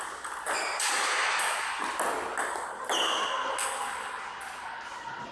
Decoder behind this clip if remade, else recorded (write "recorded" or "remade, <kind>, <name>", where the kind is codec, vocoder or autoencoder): recorded